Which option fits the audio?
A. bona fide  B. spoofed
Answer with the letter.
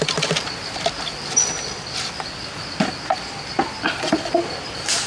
A